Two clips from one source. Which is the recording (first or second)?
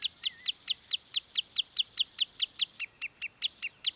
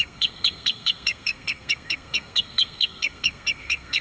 first